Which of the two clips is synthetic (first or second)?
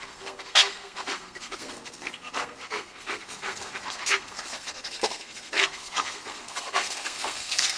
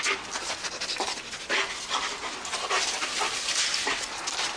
first